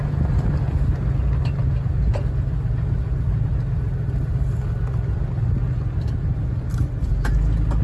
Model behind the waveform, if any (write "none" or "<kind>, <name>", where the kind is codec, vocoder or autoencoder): none